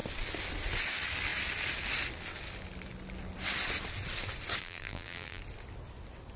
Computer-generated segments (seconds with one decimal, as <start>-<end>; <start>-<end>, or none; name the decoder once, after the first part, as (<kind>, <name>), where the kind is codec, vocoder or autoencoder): 4.6-5.4 (vocoder, BigVGAN v2)